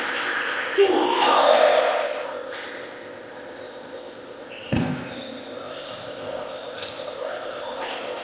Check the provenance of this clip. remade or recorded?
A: remade